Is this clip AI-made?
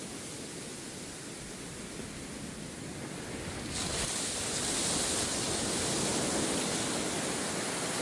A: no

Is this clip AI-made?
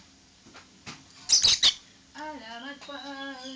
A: no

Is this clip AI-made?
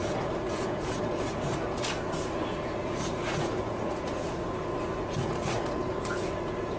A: yes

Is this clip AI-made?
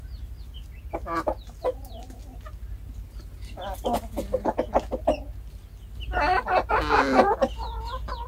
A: no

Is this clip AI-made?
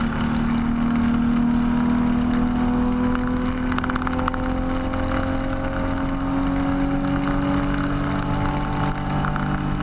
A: no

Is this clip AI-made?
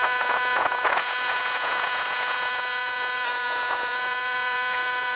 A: yes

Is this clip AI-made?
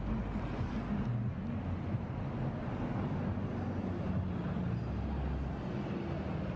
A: no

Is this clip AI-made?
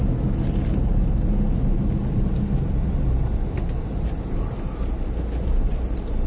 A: no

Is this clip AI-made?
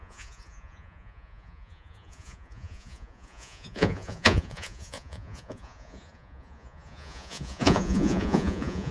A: yes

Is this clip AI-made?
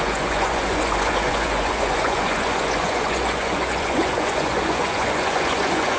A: yes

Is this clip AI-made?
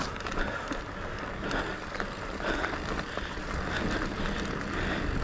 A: no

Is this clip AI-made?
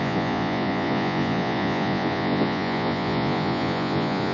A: yes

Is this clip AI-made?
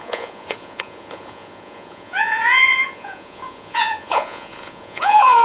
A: yes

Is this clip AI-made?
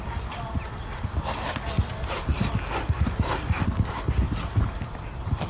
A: no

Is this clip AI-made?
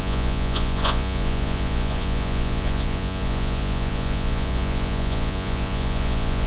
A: yes